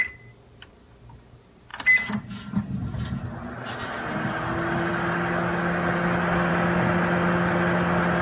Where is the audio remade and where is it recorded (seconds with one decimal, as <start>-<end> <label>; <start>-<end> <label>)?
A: 0.0-8.2 recorded